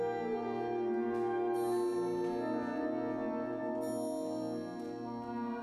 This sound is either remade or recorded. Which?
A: recorded